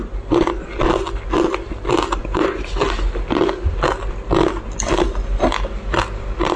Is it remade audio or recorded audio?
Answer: recorded